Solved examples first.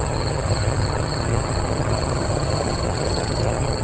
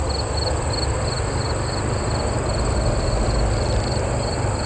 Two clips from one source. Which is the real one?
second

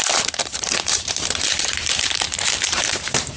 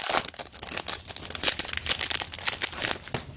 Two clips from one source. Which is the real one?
second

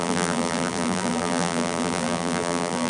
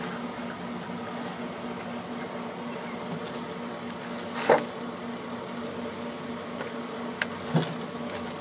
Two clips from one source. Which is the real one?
second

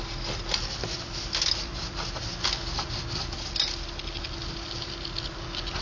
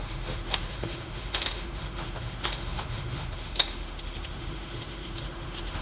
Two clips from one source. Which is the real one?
first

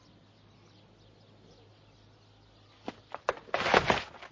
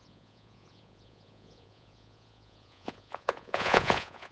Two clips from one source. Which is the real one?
first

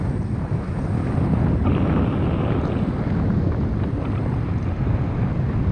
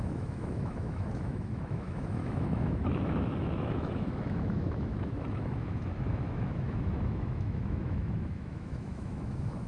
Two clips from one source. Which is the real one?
first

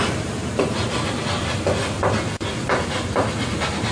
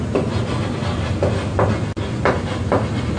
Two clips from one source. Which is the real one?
second